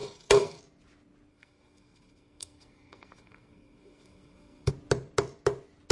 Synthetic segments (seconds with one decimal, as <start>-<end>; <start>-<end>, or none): 0.0-0.6; 1.3-4.7